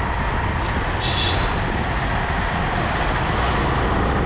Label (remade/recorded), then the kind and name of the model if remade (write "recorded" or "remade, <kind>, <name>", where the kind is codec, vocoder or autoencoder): recorded